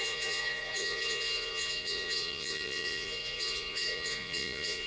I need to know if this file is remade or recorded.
remade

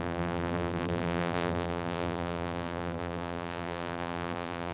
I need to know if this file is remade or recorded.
remade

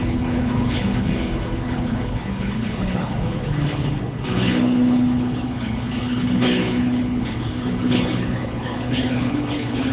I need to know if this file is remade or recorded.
remade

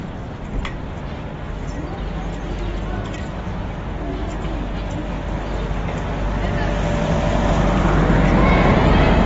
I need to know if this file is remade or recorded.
recorded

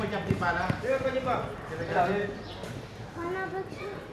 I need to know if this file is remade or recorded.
recorded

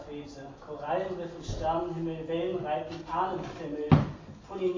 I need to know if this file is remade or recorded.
recorded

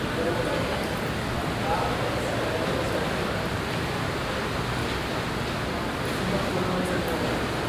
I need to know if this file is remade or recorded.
recorded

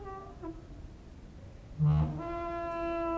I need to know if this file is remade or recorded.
recorded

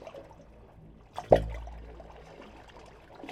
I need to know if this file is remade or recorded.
recorded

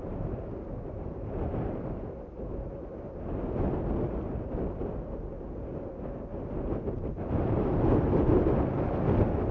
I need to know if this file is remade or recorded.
recorded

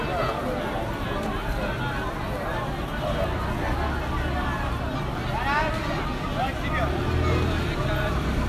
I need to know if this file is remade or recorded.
recorded